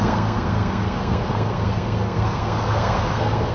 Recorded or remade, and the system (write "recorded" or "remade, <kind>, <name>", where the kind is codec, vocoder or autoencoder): remade, codec, SNAC